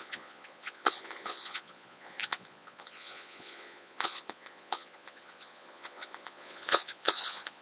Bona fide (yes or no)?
no